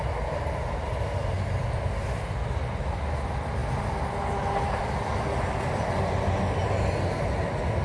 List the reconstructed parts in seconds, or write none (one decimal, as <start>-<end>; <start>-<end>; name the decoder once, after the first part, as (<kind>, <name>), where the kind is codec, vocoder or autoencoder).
none